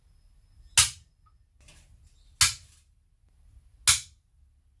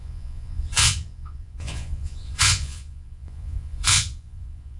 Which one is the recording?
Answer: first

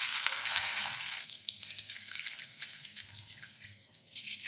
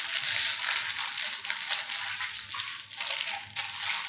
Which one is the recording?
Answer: second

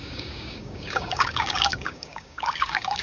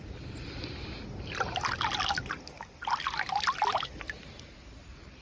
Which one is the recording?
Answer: second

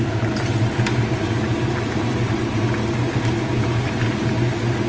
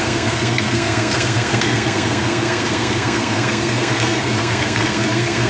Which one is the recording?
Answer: first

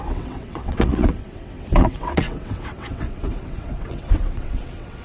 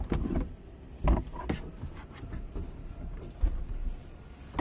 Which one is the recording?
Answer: second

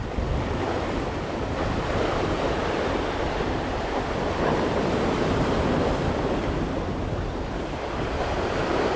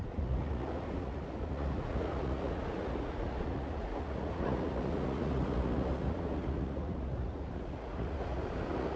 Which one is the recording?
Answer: first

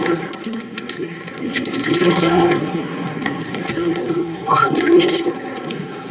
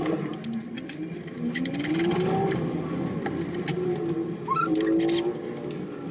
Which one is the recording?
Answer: second